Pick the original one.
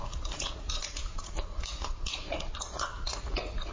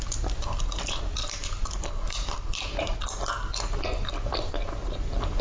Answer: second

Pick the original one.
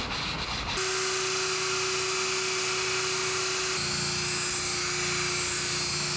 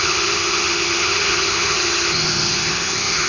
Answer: first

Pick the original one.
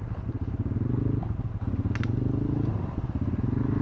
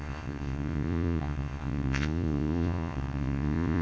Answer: first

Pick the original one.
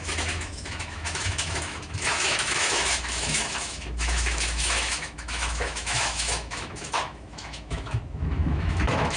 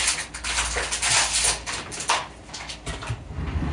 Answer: second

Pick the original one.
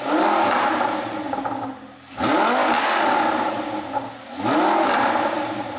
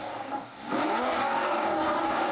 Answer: first